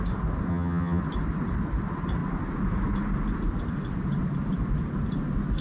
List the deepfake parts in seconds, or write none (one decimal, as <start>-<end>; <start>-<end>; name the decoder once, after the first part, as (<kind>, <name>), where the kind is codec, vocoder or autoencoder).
0.5-1.0 (vocoder, HiFi-GAN)